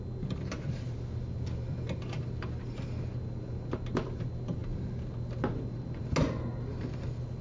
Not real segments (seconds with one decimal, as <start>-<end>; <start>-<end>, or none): none